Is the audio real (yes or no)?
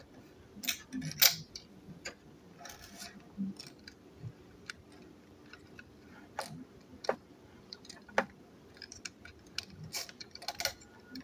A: yes